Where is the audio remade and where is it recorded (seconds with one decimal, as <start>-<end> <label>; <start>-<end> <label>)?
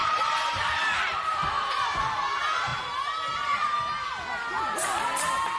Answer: 0.0-0.8 remade; 0.8-1.3 recorded; 1.3-1.8 remade; 1.8-5.6 recorded